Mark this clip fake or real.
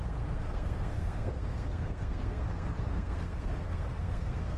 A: fake